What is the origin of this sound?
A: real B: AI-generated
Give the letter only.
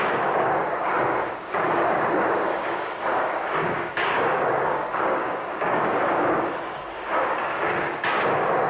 B